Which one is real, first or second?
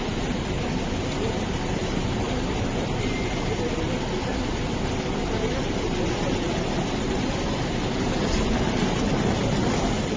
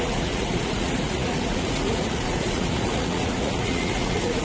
first